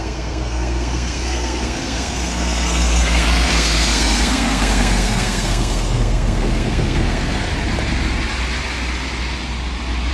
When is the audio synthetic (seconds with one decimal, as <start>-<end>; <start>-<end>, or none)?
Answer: 0.0-7.5